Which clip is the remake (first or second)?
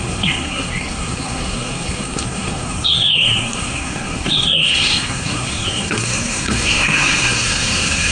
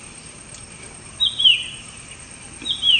first